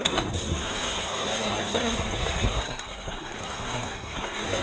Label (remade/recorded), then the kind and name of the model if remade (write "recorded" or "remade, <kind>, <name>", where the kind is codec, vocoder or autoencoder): remade, codec, SNAC